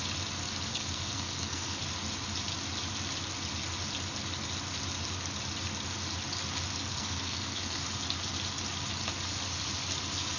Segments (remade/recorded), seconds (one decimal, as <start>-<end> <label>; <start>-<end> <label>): 0.0-0.7 recorded; 0.7-1.8 remade; 1.8-6.9 recorded; 6.9-7.8 remade; 7.8-10.4 recorded